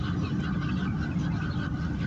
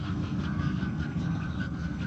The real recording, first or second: first